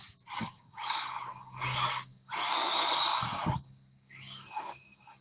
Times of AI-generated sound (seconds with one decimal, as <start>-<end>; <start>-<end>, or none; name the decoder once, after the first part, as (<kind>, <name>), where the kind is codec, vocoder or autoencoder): 0.4-2.7 (codec, DAC); 3.1-5.2

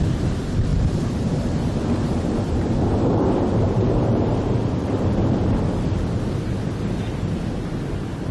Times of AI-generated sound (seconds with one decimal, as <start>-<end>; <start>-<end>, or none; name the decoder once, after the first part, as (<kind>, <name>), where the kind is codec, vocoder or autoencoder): 0.7-5.1 (vocoder, BigVGAN v2)

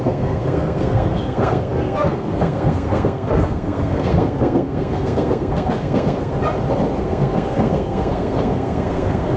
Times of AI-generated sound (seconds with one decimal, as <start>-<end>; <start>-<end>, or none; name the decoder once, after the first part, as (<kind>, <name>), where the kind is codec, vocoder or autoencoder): 0.0-6.3 (codec, SNAC); 7.0-9.4

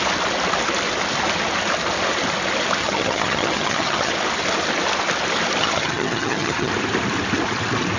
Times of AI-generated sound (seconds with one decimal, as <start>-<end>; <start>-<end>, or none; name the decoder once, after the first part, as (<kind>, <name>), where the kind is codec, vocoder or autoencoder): 2.8-4.1 (vocoder, HiFi-GAN); 5.6-6.7

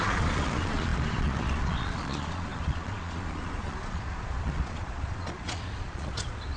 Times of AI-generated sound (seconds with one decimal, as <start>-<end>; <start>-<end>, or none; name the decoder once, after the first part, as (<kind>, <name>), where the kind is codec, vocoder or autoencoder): 0.0-6.6 (vocoder, Vocos)

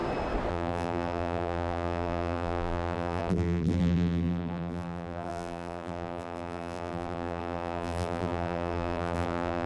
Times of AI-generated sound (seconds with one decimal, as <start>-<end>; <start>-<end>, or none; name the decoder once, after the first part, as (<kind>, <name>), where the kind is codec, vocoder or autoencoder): 0.5-9.7 (vocoder, BigVGAN v2)

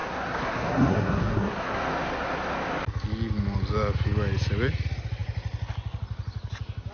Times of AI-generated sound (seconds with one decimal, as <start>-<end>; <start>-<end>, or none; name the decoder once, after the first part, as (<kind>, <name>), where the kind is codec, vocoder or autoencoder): 0.0-1.8 (codec, SNAC)

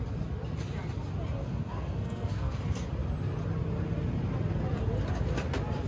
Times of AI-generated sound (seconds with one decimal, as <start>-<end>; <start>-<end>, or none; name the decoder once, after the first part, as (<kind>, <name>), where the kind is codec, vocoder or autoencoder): 1.4-2.6 (codec, SNAC)